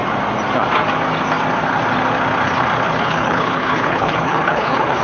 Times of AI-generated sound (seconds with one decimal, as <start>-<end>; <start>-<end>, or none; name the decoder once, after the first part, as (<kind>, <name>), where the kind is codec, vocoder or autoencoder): 3.0-5.0 (codec, HILCodec)